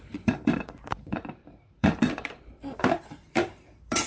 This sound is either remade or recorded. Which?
remade